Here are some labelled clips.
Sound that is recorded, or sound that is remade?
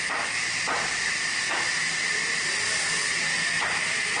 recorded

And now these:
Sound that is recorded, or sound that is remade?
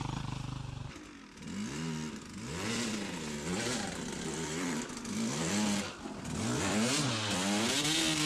recorded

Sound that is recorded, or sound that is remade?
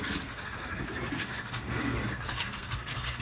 remade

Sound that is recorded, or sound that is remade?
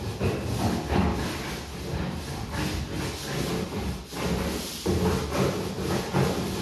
recorded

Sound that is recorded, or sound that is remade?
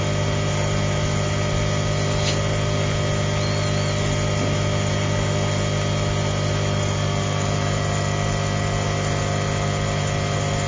recorded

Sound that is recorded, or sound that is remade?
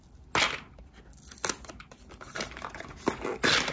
recorded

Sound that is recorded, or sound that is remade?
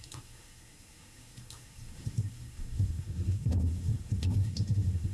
remade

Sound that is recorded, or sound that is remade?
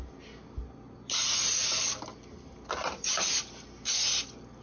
recorded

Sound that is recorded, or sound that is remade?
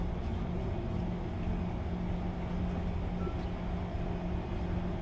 recorded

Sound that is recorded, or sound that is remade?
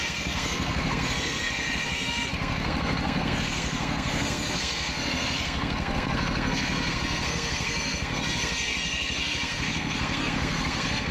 remade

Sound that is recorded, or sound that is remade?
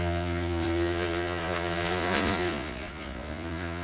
remade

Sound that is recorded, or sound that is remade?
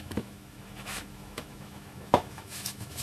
remade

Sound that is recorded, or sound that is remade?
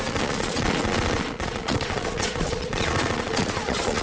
remade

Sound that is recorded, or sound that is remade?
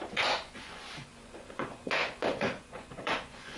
remade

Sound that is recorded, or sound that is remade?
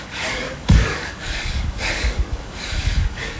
remade